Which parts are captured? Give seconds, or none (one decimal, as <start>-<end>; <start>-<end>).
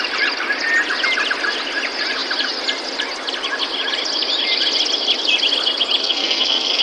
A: 0.0-6.0